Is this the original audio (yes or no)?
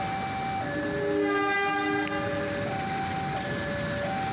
yes